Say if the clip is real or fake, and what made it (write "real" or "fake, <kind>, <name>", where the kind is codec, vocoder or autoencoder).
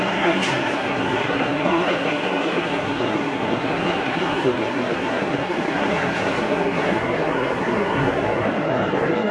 fake, codec, SNAC